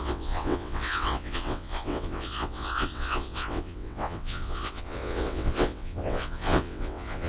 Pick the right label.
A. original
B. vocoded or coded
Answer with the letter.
B